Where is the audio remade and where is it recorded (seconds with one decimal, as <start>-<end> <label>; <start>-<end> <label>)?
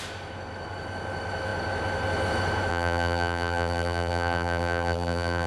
0.0-2.7 recorded; 2.7-5.5 remade